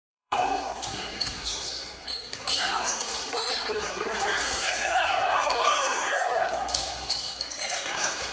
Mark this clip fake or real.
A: fake